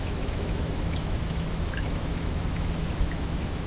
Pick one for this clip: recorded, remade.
remade